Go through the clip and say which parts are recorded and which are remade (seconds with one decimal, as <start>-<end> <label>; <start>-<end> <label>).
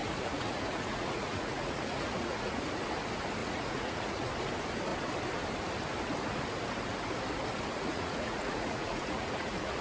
0.0-2.6 remade; 2.6-3.4 recorded; 3.4-4.3 remade; 4.3-7.8 recorded; 7.8-9.8 remade